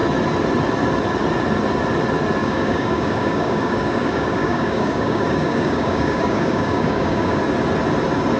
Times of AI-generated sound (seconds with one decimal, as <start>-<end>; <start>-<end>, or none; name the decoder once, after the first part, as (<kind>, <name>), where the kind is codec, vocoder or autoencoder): 2.4-7.4 (codec, DAC)